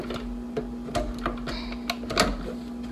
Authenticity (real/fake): real